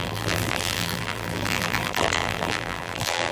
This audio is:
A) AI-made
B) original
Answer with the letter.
A